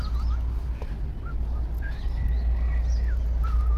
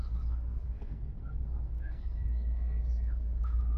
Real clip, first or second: first